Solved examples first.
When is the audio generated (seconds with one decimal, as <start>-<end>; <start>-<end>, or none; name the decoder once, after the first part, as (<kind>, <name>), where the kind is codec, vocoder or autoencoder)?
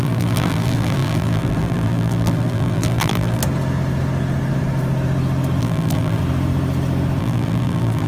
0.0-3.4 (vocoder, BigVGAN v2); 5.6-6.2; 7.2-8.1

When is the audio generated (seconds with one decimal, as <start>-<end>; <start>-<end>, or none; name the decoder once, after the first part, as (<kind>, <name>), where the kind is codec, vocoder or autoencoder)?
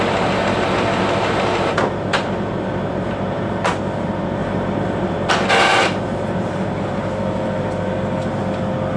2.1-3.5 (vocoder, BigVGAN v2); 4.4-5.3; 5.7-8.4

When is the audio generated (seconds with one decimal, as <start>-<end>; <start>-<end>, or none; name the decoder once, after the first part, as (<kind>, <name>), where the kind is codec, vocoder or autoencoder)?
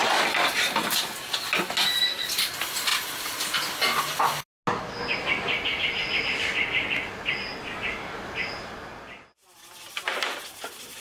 none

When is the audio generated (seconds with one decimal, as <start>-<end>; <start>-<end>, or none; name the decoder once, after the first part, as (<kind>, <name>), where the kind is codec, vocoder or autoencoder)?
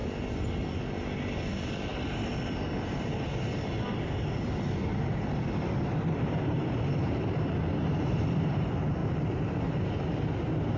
4.9-8.6 (vocoder, BigVGAN v2); 9.0-10.3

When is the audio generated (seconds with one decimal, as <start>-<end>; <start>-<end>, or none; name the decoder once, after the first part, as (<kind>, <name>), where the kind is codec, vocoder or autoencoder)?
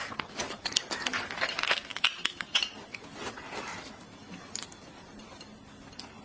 1.9-3.3 (vocoder, BigVGAN v2); 4.2-5.3